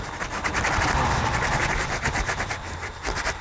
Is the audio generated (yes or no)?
no